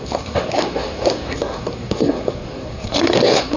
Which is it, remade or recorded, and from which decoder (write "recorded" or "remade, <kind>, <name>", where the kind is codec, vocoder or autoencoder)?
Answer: remade, codec, SNAC